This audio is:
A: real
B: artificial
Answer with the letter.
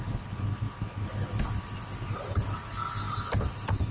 A